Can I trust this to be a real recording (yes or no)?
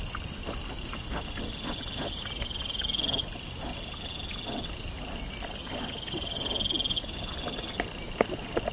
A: yes